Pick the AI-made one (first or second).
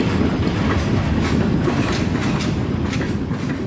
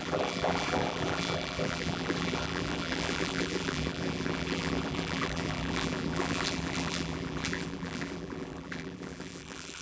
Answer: second